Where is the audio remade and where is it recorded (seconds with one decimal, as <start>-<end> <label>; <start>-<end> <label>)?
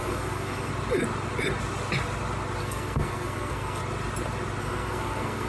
0.0-0.7 remade; 0.7-2.6 recorded; 2.6-3.8 remade; 3.8-4.6 recorded; 4.6-5.5 remade